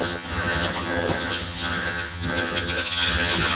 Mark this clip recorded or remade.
remade